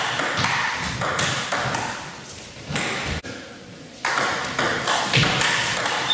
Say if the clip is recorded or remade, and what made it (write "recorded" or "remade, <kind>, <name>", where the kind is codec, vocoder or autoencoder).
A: recorded